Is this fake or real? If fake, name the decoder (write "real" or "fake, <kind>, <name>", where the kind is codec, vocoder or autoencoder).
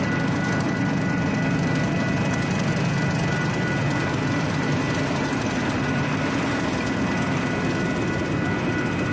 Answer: real